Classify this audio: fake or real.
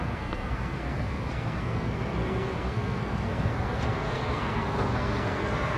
fake